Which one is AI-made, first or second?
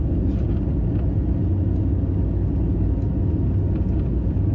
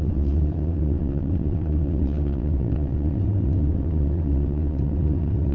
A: second